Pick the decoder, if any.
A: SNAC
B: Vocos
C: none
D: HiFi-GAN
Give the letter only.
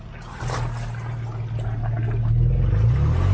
C